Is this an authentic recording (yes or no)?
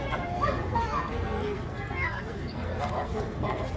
no